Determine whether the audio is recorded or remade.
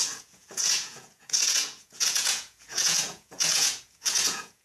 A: remade